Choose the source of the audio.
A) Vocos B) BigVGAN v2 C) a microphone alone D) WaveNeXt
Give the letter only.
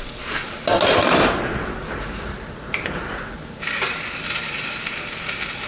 B